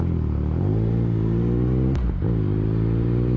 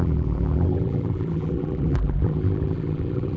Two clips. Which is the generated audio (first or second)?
second